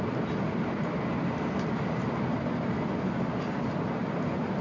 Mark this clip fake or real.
real